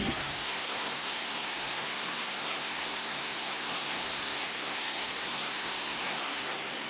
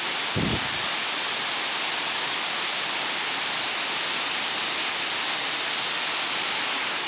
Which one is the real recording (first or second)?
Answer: second